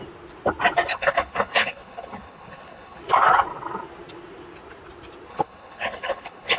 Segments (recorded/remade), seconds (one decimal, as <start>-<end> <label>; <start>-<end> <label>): 0.0-0.9 recorded; 0.9-3.0 remade; 3.0-5.3 recorded; 5.3-6.6 remade